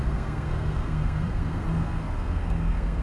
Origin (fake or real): fake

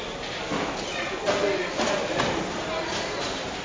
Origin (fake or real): real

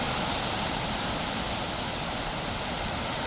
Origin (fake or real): real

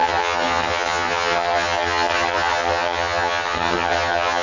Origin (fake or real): fake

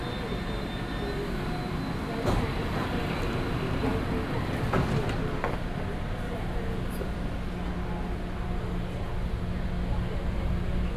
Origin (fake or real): real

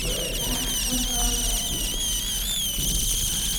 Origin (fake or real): real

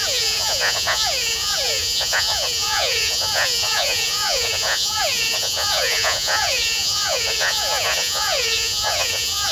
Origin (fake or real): fake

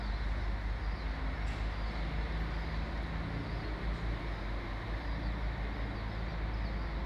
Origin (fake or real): real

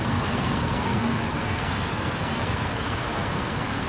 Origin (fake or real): fake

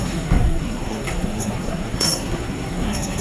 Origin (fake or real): fake